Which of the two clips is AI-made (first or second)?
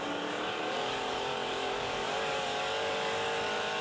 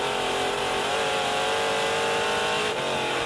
first